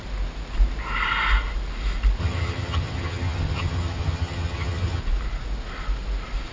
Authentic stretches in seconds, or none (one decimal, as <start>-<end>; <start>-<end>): 0.0-2.2; 5.0-6.5